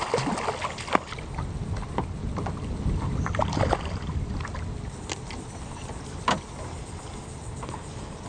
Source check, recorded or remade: recorded